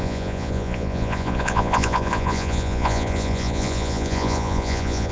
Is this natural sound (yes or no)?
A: no